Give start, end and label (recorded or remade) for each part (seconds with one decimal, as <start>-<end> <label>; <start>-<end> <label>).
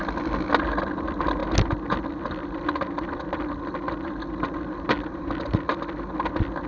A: 0.0-6.7 recorded